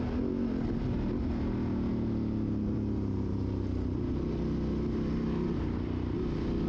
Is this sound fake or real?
real